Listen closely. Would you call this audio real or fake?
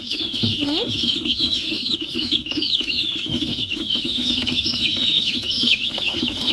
fake